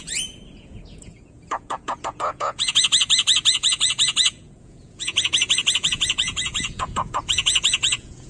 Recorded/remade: remade